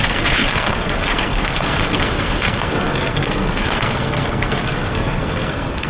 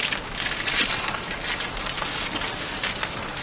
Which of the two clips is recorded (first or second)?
second